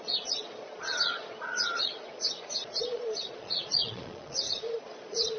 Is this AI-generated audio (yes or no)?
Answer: yes